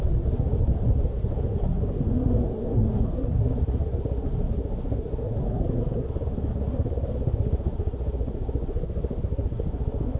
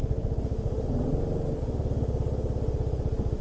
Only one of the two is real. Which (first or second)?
second